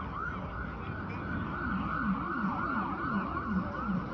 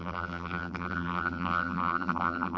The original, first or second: first